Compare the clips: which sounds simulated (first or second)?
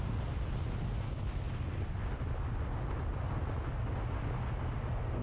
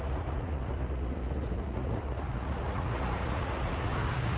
second